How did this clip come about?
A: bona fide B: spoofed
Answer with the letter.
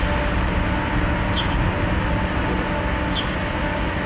A